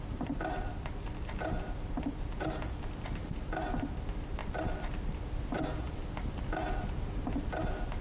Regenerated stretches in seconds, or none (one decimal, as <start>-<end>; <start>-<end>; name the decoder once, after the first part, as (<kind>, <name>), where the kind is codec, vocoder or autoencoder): none